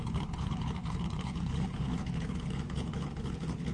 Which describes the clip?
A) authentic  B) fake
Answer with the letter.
B